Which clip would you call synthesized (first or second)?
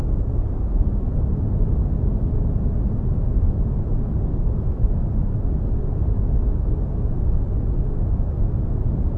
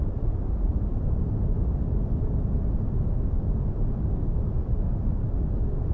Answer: second